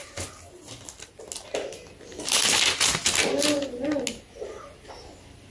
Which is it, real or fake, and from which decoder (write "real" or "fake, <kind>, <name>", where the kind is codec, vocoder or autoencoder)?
real